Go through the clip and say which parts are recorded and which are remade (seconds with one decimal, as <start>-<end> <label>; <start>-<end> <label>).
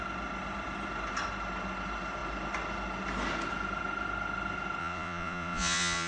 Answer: 0.0-4.8 recorded; 4.8-6.1 remade